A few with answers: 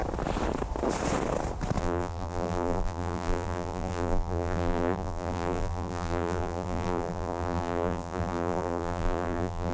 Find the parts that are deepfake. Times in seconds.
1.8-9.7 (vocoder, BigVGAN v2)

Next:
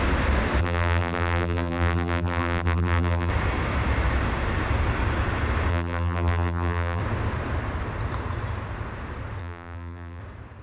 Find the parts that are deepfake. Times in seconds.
0.6-3.3 (vocoder, BigVGAN v2); 5.7-7.0; 9.4-10.2

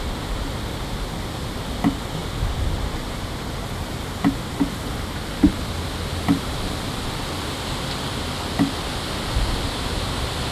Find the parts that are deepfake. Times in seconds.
none

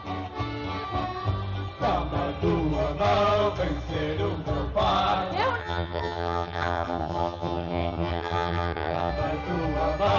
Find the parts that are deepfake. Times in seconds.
5.6-9.1 (vocoder, HiFi-GAN)

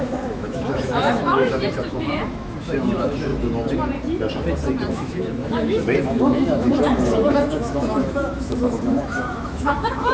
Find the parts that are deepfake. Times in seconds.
0.0-3.3 (autoencoder, DAC-VAE); 4.9-10.1

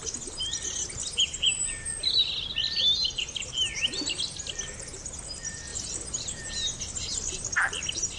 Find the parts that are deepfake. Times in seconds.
none

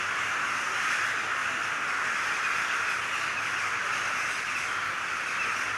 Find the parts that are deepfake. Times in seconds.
none

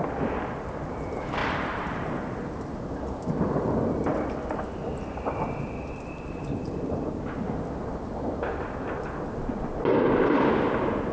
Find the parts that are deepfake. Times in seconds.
1.4-2.2 (vocoder, BigVGAN v2); 6.6-7.3